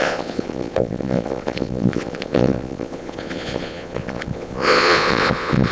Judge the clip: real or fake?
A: fake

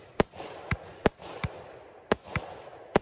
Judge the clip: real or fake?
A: real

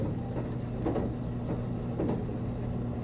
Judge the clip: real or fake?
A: real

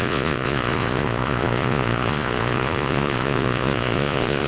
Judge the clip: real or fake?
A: fake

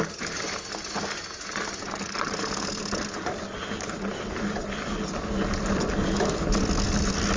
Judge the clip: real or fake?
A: real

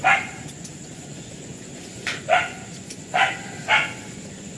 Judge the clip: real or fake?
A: fake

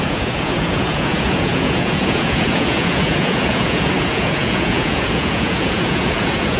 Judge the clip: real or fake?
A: fake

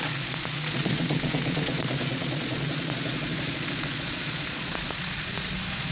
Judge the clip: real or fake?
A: fake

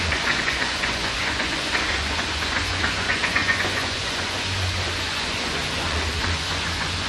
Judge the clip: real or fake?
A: fake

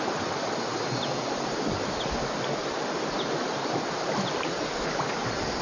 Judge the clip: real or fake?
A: real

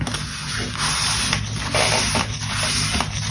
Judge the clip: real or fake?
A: real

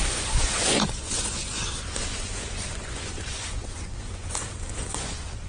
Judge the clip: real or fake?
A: fake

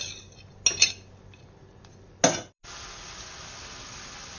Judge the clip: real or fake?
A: real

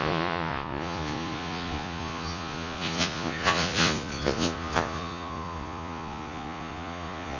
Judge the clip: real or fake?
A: fake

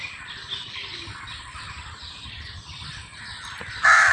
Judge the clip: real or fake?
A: real